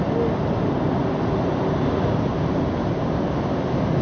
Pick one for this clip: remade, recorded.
recorded